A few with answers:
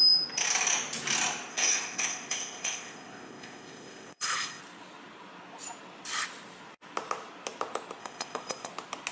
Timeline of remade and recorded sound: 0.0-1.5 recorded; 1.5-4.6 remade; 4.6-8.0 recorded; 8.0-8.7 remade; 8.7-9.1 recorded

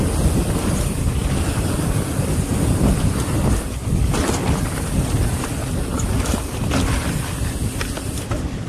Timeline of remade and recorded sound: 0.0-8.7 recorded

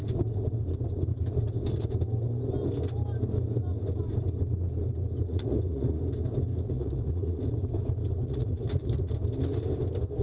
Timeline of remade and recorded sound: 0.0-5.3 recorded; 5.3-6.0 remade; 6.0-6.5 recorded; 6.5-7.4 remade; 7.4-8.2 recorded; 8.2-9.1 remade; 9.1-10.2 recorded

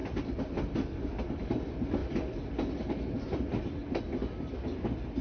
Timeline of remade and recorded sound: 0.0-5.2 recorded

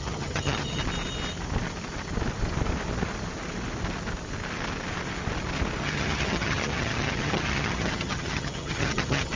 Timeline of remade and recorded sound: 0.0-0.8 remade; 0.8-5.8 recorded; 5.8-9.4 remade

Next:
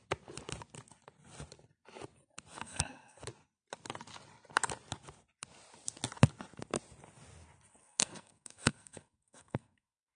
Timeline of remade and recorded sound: 0.0-2.5 recorded; 2.5-3.2 remade; 3.2-7.7 recorded; 7.7-10.2 remade

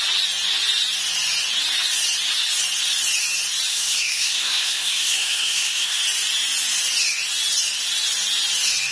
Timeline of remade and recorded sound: 0.0-3.7 recorded; 3.7-6.0 remade; 6.0-8.9 recorded